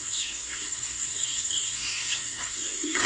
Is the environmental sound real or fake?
fake